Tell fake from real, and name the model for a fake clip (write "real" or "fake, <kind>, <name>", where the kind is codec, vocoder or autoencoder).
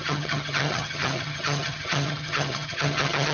fake, vocoder, HiFi-GAN